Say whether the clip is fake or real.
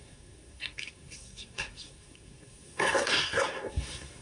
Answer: fake